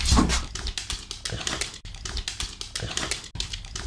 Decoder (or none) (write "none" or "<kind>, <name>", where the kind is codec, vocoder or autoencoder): none